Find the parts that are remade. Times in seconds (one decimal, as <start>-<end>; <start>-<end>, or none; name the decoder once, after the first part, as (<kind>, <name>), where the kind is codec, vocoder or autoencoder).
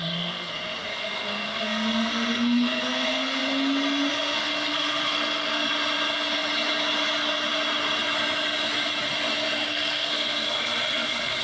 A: 0.0-3.4 (codec, SNAC); 4.1-5.6; 9.7-11.4